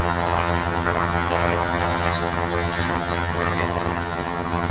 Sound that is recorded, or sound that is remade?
remade